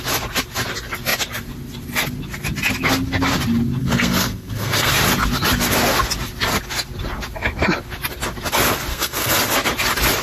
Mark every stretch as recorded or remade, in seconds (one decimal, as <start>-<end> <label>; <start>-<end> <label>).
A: 0.0-3.8 recorded; 3.8-4.9 remade; 4.9-8.9 recorded; 8.9-9.4 remade; 9.4-10.2 recorded